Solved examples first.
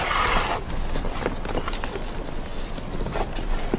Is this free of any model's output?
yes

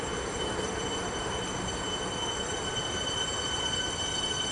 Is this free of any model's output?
yes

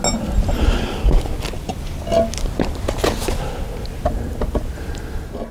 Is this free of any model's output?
yes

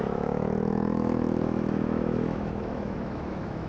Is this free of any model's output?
no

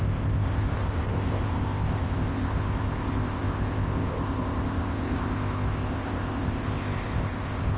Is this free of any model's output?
no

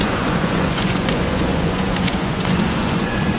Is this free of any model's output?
no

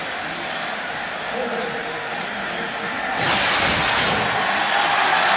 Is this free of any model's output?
yes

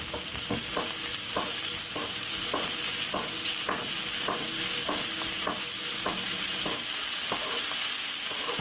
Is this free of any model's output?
yes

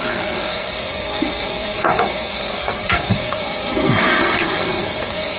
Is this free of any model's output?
no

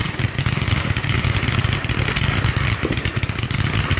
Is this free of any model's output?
yes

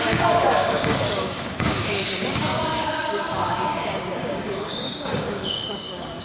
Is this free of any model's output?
no